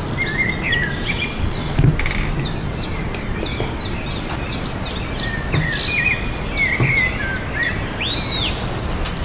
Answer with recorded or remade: recorded